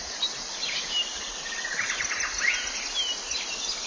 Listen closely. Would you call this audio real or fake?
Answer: real